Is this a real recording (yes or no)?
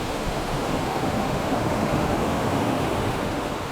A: no